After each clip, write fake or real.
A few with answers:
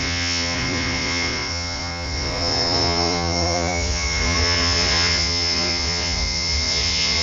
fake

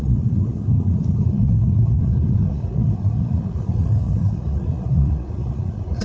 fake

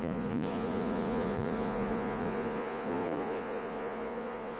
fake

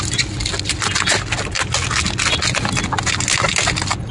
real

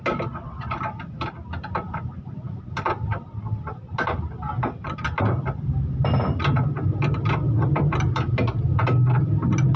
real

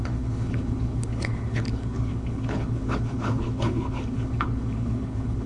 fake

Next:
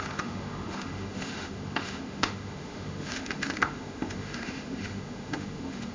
fake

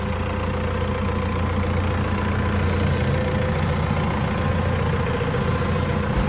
real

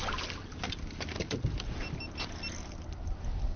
real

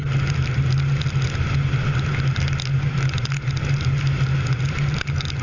real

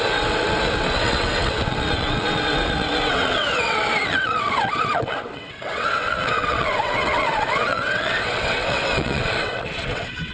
fake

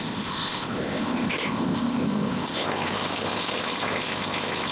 fake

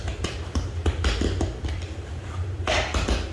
real